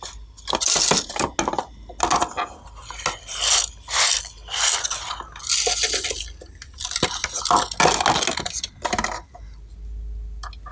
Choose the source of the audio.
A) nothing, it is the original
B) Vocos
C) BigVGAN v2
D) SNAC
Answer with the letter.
A